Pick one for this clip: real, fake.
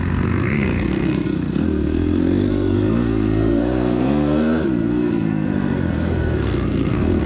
fake